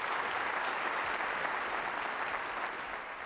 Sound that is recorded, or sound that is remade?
recorded